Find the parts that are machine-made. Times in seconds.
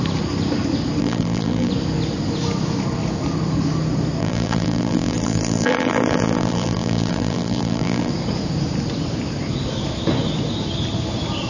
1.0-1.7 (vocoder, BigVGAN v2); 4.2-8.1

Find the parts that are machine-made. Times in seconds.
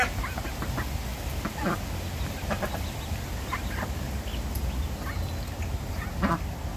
1.1-3.2 (vocoder, BigVGAN v2)